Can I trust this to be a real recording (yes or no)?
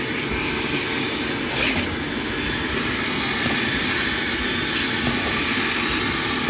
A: yes